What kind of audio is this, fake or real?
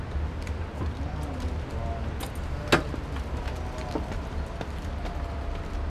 real